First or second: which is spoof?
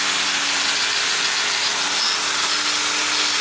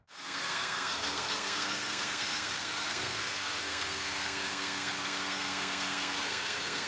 second